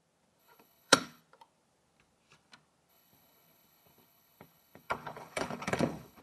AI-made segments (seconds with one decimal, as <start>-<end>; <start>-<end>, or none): 0.4-1.2; 2.9-6.2